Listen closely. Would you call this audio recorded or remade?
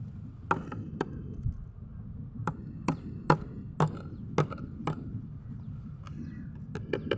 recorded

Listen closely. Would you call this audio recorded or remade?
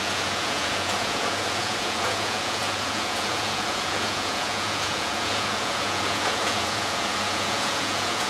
remade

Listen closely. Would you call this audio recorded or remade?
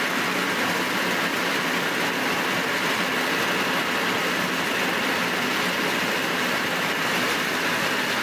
recorded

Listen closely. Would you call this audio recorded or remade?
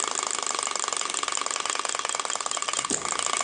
recorded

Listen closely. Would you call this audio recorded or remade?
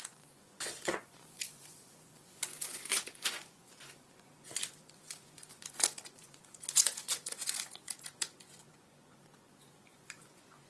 remade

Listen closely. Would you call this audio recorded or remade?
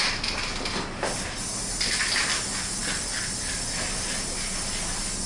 recorded